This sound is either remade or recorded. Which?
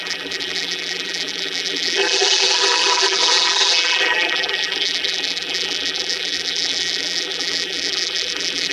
remade